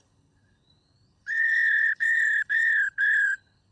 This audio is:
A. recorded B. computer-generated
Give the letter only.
B